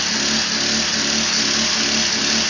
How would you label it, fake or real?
real